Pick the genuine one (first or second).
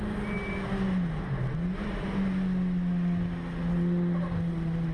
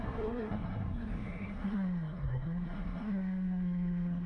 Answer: first